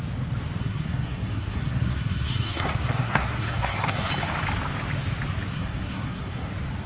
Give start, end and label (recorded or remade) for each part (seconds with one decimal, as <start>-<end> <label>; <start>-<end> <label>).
0.0-0.6 recorded; 0.6-4.1 remade; 4.1-5.5 recorded; 5.5-6.5 remade; 6.5-6.9 recorded